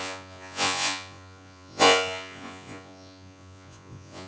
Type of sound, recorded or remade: remade